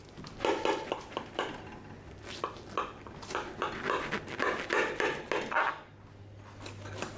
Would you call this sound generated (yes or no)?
no